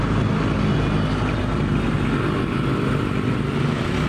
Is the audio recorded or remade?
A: recorded